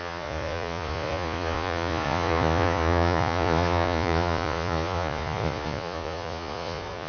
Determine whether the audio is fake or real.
fake